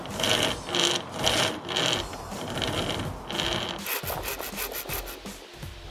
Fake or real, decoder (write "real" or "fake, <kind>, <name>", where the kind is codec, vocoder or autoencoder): real